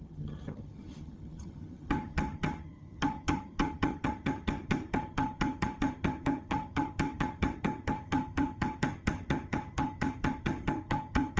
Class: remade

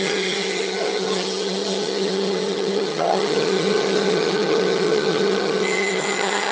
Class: remade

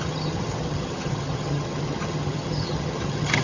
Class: remade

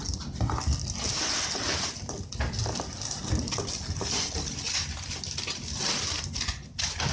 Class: recorded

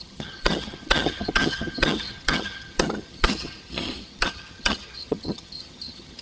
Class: remade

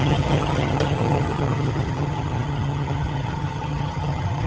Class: remade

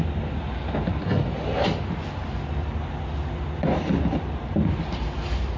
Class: recorded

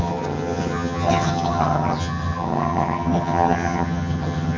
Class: remade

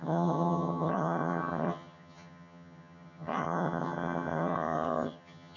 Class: remade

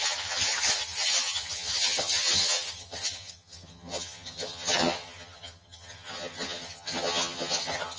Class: remade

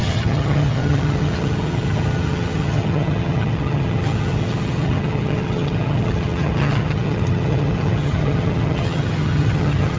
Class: remade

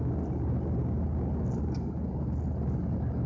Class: recorded